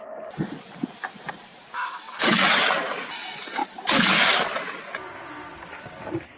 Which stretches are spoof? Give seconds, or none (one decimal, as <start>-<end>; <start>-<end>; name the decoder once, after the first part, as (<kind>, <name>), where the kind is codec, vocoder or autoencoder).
none